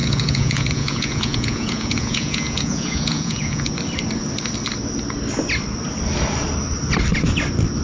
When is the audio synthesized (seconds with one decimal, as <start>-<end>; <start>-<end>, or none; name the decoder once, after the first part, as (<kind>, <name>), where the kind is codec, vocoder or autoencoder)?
0.0-3.7 (vocoder, Vocos)